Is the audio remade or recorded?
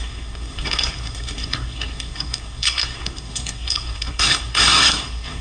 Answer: remade